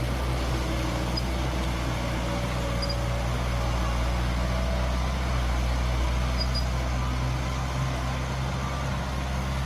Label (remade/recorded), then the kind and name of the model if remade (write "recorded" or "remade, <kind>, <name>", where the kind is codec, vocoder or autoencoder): recorded